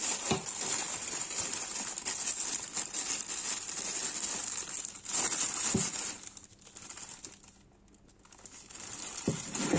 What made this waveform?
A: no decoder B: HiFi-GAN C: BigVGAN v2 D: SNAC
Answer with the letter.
A